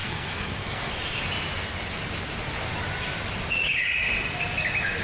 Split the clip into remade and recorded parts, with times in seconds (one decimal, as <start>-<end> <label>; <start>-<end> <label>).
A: 0.0-0.9 remade; 0.9-5.0 recorded